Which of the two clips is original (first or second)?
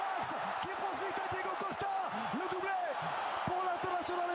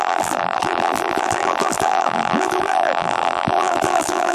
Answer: first